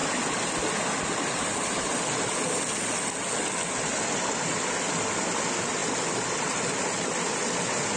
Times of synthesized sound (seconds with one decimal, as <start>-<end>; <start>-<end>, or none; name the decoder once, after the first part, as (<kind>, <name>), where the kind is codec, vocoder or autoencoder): none